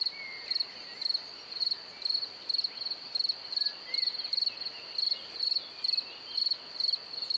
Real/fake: real